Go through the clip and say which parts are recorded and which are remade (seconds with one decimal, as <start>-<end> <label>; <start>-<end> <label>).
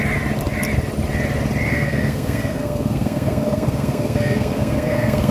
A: 0.0-1.7 recorded; 1.7-5.3 remade